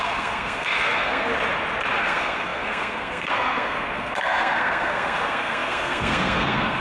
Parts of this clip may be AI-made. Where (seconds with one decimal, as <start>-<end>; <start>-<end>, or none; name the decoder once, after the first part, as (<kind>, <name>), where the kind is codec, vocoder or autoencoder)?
0.0-1.3 (codec, SNAC); 2.0-6.8